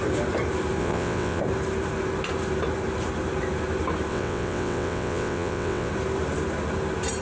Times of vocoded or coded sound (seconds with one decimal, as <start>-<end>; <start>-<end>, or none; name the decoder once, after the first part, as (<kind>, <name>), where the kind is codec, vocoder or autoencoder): 0.8-1.4 (vocoder, WaveNeXt); 4.1-5.9